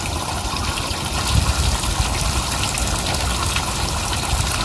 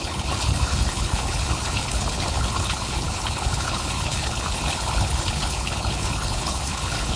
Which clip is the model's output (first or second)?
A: second